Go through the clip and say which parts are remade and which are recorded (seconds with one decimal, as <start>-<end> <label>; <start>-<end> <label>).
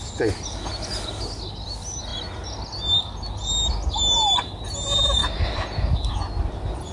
0.0-6.9 recorded